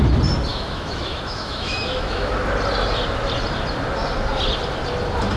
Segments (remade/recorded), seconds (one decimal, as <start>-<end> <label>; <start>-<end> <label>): 0.0-0.5 recorded; 0.5-2.3 remade; 2.3-5.4 recorded